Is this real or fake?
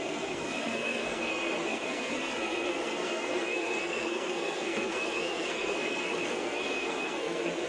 fake